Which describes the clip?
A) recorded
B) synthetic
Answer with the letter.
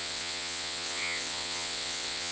B